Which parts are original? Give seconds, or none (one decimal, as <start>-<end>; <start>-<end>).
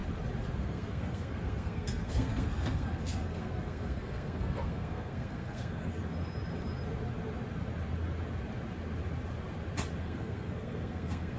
0.0-0.6; 6.0-10.0